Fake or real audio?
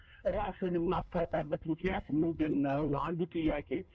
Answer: fake